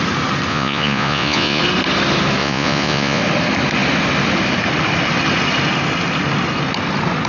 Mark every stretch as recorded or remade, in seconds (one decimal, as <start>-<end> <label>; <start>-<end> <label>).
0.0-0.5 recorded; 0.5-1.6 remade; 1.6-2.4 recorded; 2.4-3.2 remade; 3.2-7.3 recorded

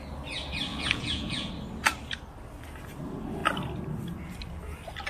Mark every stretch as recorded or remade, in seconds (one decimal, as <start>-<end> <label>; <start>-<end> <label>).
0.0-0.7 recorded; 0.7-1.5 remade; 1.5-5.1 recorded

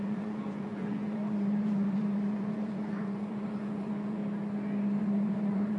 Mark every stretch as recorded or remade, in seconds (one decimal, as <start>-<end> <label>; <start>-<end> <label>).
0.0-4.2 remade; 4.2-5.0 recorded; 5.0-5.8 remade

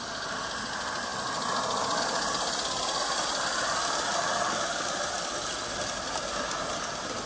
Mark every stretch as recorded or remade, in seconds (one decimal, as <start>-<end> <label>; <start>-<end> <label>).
0.0-7.3 recorded